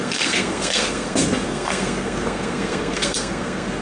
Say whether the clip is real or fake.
fake